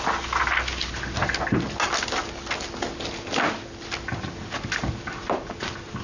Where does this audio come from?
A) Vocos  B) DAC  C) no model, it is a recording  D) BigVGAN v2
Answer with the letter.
C